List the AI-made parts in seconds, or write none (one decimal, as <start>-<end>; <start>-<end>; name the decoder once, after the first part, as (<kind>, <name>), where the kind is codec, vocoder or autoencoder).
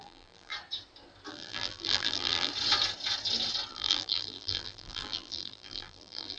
0.0-0.5 (vocoder, BigVGAN v2); 1.3-2.5; 3.7-6.4